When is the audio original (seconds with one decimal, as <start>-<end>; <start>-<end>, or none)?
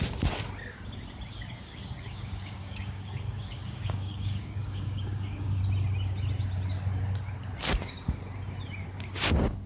0.0-1.3; 5.6-9.7